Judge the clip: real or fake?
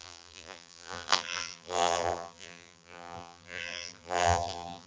fake